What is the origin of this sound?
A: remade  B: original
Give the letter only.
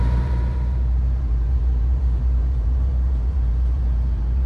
A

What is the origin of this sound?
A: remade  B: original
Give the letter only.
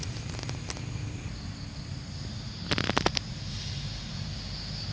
B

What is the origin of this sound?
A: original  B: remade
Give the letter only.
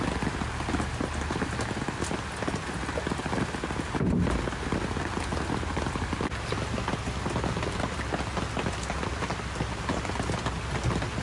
A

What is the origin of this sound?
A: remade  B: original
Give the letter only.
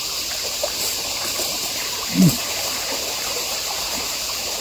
A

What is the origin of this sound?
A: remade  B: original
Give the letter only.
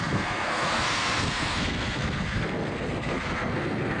A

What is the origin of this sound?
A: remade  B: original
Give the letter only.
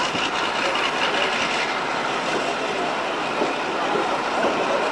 B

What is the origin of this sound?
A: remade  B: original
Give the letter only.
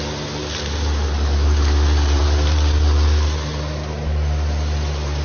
B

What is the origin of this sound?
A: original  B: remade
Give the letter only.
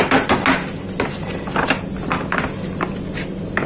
A